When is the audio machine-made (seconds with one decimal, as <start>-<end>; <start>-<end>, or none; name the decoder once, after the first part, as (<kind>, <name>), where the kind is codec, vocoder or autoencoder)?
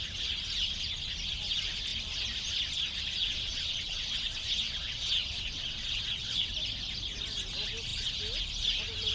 3.2-6.5 (vocoder, WaveNeXt)